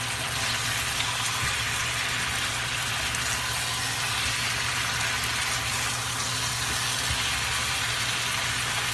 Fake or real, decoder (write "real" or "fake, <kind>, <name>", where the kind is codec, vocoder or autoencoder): real